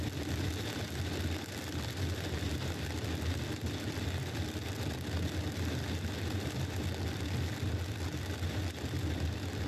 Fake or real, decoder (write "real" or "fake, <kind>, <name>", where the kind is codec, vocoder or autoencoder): real